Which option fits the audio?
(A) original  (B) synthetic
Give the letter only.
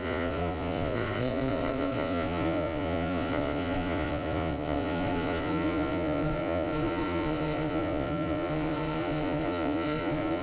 B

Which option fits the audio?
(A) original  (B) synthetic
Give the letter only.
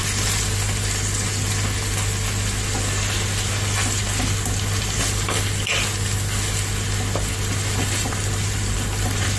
A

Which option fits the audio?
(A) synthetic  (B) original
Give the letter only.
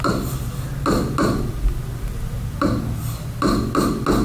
B